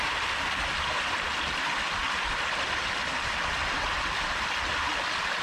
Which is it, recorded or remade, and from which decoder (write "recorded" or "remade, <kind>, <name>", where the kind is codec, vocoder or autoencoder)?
recorded